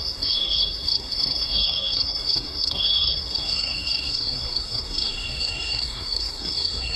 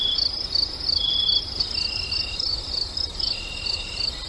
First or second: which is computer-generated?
first